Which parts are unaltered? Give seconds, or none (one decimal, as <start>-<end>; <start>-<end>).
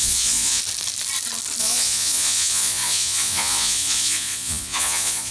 0.6-1.6